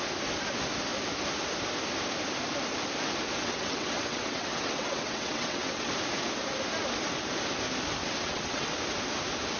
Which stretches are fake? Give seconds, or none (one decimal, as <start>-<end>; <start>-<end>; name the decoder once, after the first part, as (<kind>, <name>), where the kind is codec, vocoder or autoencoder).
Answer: 3.4-5.9 (vocoder, WaveNeXt); 8.0-8.7